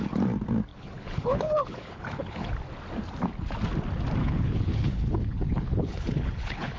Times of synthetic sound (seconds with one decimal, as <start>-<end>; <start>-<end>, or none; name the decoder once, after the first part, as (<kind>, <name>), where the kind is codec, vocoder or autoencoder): 0.7-2.5 (codec, HILCodec); 4.2-6.8